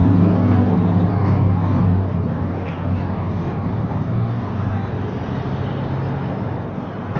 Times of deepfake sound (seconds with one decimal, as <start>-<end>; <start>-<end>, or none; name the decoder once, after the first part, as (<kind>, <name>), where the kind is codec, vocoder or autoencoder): 0.0-0.7 (codec, DAC); 1.1-4.9